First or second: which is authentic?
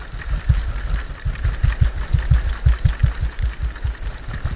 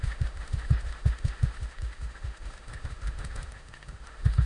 first